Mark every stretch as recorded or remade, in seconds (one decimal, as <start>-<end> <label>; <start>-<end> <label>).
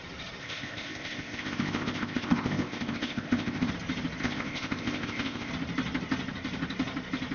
0.0-0.4 recorded; 0.4-3.7 remade; 3.7-4.2 recorded; 4.2-5.5 remade; 5.5-7.3 recorded